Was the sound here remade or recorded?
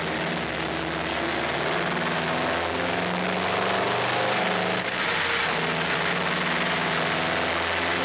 recorded